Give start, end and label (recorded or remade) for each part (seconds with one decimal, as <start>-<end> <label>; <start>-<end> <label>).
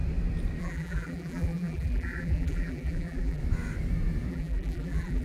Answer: 0.0-0.6 recorded; 0.6-3.4 remade; 3.4-4.3 recorded; 4.3-5.2 remade